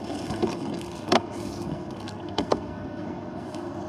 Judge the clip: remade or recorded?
remade